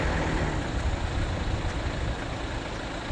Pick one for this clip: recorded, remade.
recorded